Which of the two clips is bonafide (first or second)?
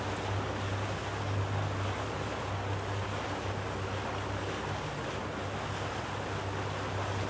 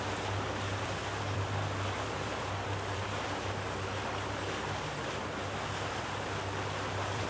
first